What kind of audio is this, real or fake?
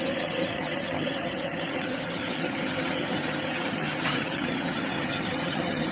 fake